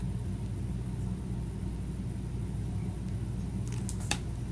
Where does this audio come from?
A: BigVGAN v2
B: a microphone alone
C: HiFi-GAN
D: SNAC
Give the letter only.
B